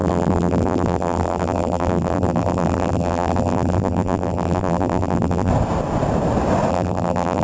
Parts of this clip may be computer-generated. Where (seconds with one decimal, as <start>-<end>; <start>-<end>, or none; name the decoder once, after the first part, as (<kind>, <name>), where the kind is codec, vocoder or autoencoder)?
0.0-5.5 (vocoder, BigVGAN v2); 6.7-7.4